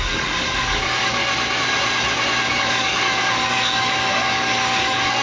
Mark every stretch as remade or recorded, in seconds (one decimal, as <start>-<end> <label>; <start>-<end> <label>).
0.0-1.2 remade; 1.2-2.5 recorded; 2.5-5.2 remade